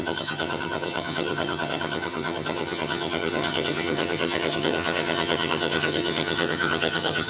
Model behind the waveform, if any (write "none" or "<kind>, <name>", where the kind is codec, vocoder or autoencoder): vocoder, HiFi-GAN